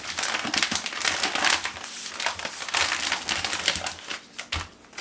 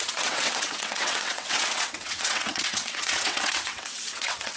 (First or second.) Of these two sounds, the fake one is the second